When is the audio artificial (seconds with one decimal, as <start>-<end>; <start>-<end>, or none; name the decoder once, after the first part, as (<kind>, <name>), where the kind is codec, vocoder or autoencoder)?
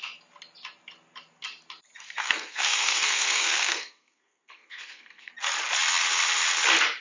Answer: 2.2-5.3 (codec, SNAC)